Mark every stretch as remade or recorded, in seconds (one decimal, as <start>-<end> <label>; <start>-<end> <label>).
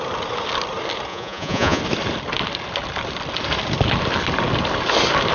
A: 0.0-1.1 recorded; 1.1-1.8 remade; 1.8-5.3 recorded